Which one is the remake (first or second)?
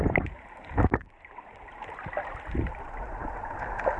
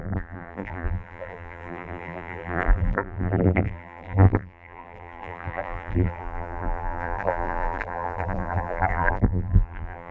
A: second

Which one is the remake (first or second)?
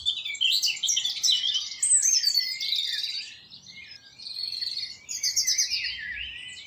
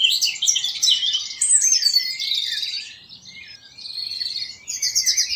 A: second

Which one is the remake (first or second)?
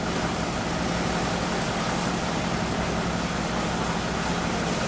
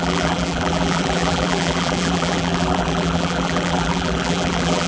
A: second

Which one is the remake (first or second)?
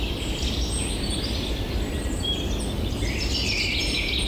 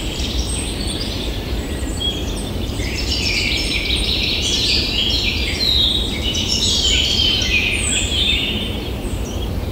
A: second